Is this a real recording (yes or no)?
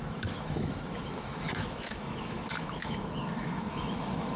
no